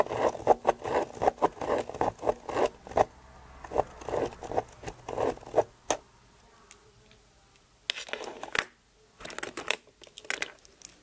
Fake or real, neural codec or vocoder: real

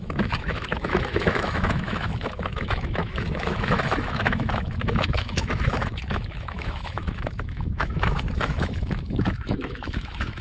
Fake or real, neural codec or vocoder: fake, autoencoder, DAC-VAE